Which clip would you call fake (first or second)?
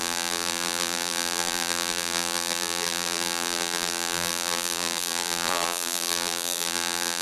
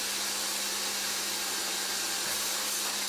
first